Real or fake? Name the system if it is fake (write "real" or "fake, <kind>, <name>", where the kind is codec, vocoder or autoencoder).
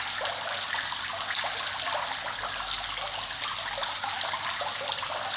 real